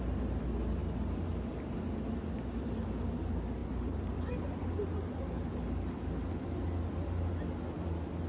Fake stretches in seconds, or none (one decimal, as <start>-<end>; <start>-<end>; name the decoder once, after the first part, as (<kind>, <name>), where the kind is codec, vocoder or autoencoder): 3.6-4.8 (vocoder, BigVGAN v2)